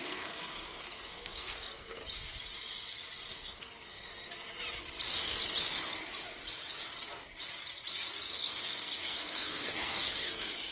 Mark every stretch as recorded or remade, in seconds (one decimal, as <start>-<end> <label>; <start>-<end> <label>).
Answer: 0.0-2.0 remade; 2.0-3.3 recorded; 3.3-4.1 remade; 4.1-8.3 recorded; 8.3-10.7 remade